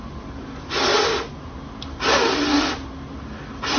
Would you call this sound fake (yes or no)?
no